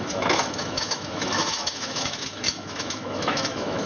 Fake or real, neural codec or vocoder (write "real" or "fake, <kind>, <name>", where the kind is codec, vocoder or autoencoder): fake, autoencoder, DAC-VAE